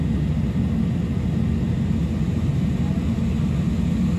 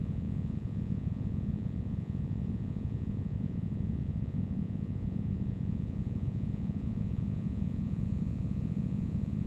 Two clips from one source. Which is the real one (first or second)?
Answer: first